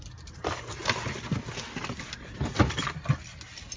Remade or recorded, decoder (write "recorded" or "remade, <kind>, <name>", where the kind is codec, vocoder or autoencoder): recorded